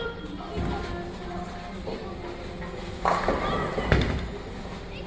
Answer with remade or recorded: recorded